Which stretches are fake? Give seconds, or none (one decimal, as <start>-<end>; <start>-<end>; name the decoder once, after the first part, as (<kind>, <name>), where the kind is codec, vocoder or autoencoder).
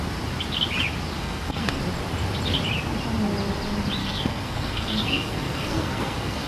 1.2-1.8 (codec, SNAC); 4.0-6.5